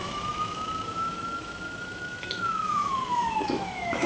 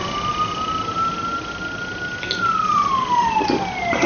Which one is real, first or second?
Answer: second